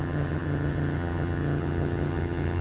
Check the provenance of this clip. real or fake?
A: fake